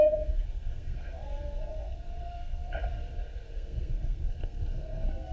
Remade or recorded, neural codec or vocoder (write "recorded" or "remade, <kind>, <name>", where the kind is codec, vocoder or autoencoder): remade, codec, SNAC